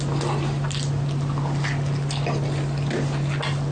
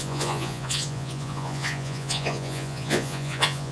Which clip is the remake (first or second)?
second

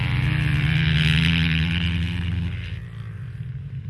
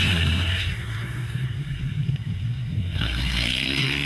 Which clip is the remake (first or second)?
second